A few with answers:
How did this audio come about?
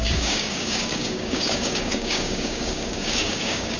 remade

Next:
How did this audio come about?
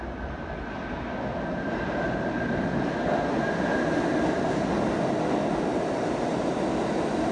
recorded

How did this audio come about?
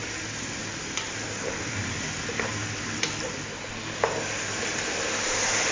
recorded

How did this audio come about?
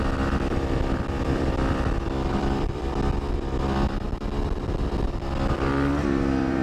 remade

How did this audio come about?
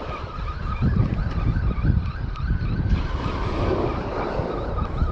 recorded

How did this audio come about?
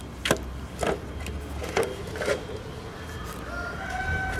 recorded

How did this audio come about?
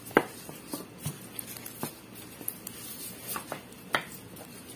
recorded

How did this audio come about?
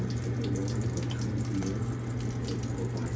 recorded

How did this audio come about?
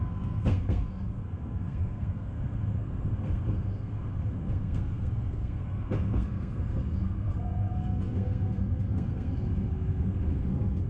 remade